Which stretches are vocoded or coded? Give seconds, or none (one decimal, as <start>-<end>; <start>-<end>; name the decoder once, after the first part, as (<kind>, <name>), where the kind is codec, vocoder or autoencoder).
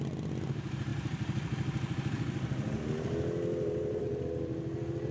none